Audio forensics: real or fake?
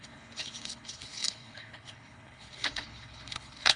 fake